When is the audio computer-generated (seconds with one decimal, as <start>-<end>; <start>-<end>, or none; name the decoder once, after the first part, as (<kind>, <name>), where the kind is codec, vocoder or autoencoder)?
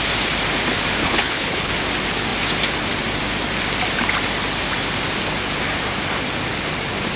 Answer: 1.0-1.7 (codec, HILCodec)